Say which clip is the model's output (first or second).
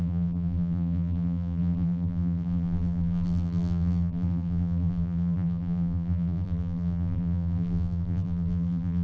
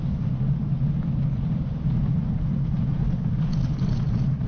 first